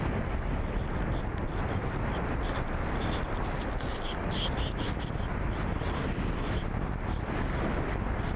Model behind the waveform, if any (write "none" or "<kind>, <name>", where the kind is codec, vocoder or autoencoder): none